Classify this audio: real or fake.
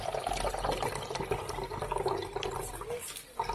real